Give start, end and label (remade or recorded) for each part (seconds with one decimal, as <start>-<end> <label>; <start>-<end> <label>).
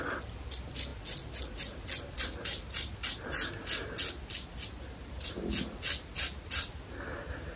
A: 0.0-7.6 recorded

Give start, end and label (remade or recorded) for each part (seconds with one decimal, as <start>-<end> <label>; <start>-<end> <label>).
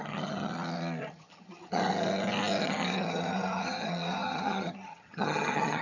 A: 0.0-0.5 remade; 0.5-1.0 recorded; 1.0-1.8 remade; 1.8-2.6 recorded; 2.6-5.8 remade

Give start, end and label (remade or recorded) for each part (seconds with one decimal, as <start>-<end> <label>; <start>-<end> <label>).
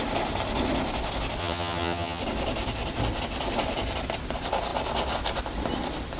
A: 0.0-1.4 recorded; 1.4-2.2 remade; 2.2-6.2 recorded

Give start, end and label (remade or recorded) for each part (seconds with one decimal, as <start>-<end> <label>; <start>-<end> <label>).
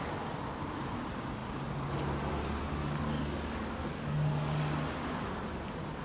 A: 0.0-2.8 recorded; 2.8-4.6 remade; 4.6-6.0 recorded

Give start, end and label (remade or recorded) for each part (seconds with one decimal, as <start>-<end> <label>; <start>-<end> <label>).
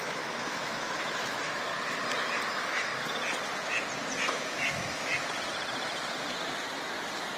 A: 0.0-1.7 remade; 1.7-2.5 recorded; 2.5-2.9 remade; 2.9-4.3 recorded; 4.3-5.1 remade; 5.1-7.4 recorded